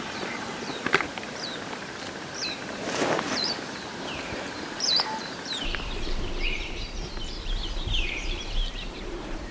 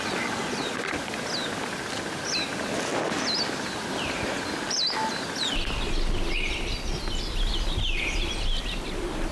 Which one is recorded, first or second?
second